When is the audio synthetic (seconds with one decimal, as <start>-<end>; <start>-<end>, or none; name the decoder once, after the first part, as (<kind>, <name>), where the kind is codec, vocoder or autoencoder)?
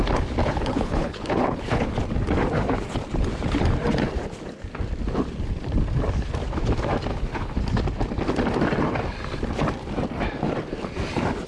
0.4-1.9 (codec, HILCodec); 7.1-7.6